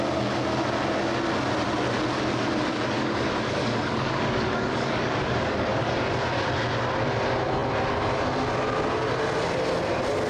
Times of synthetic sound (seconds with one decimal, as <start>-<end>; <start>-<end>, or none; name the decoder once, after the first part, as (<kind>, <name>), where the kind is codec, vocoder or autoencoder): 2.7-5.9 (codec, DAC)